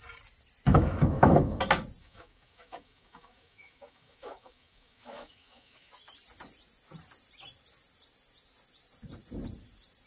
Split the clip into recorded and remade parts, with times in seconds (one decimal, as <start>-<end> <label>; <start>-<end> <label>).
0.0-0.7 recorded; 0.7-1.6 remade; 1.6-2.0 recorded; 2.0-5.9 remade; 5.9-10.1 recorded